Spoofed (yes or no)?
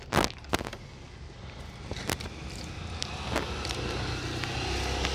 no